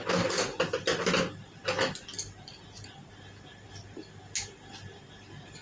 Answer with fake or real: real